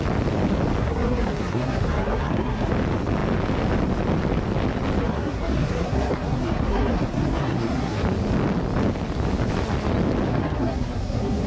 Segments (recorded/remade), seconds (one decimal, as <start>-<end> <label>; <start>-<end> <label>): 0.0-0.8 recorded; 0.8-2.7 remade; 2.7-5.0 recorded; 5.0-8.0 remade; 8.0-10.3 recorded; 10.3-11.5 remade